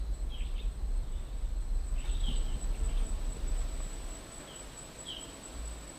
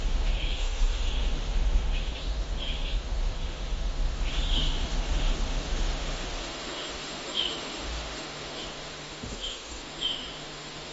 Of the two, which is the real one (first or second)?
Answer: first